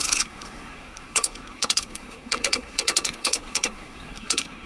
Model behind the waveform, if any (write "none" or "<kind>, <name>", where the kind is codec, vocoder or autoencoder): codec, SNAC